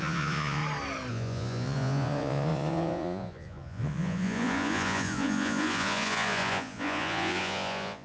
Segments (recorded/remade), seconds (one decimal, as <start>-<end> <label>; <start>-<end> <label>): 0.0-0.6 remade; 0.6-1.1 recorded; 1.1-8.0 remade